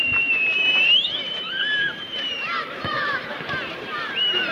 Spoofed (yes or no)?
yes